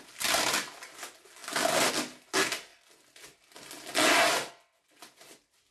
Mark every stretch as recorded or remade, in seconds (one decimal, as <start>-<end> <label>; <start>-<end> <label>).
0.0-5.7 recorded